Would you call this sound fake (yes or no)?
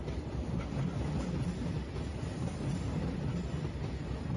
no